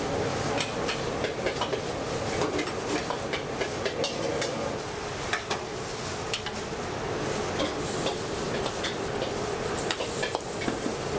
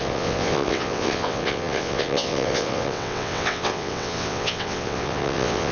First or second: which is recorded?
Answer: first